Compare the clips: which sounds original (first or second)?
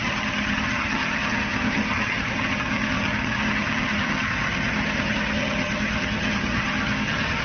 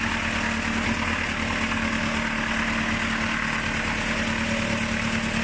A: second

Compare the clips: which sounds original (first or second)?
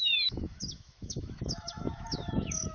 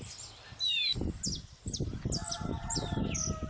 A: second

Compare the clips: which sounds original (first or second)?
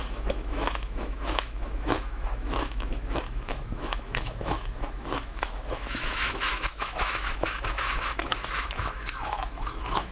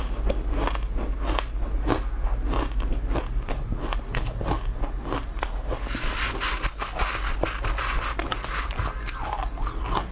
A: second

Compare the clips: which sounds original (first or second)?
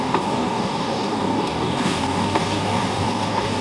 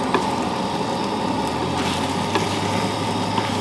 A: second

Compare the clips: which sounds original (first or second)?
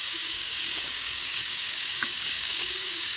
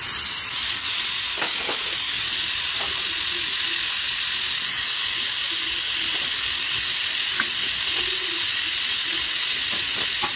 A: second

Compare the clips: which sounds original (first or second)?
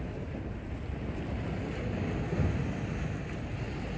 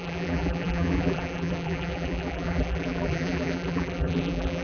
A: first